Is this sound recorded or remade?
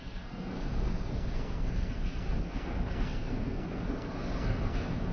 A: remade